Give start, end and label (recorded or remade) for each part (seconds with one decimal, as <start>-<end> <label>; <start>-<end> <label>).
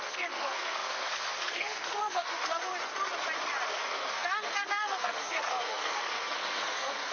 0.0-2.7 remade; 2.7-3.7 recorded; 3.7-7.1 remade